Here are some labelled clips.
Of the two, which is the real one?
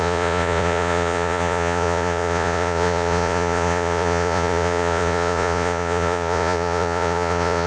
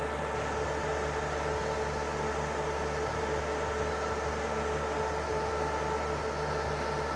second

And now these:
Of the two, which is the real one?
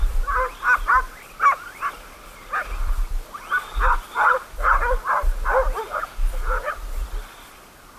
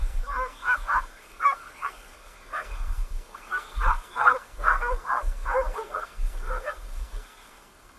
first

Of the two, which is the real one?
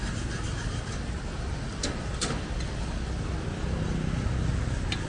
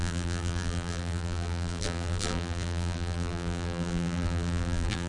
first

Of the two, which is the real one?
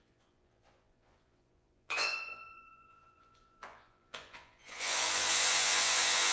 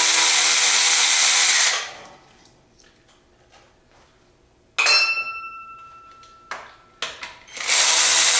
second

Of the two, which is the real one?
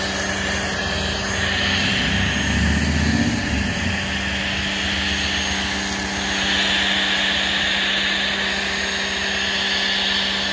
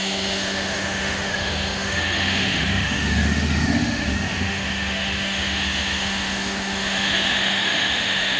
first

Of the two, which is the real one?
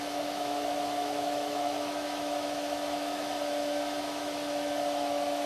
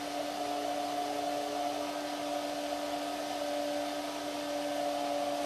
second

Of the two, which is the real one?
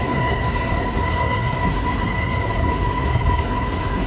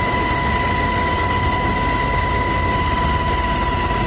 second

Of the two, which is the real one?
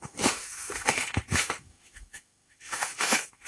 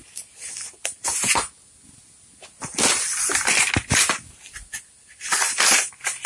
second